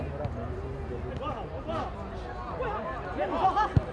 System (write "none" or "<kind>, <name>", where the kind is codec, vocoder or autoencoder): none